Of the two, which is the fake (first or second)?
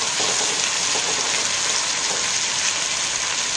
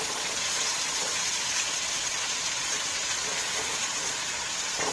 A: second